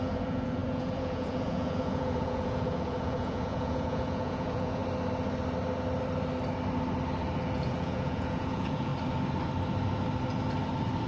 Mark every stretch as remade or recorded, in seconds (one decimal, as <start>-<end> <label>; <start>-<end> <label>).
0.0-4.8 remade; 4.8-7.4 recorded; 7.4-8.9 remade; 8.9-11.1 recorded